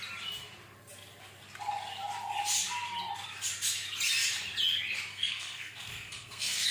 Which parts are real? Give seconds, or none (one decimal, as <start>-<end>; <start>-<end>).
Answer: 0.0-5.1